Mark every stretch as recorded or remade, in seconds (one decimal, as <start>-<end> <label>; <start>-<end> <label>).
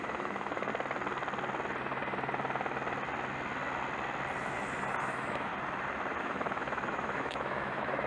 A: 0.0-0.7 remade; 0.7-5.0 recorded; 5.0-5.5 remade; 5.5-6.2 recorded; 6.2-8.1 remade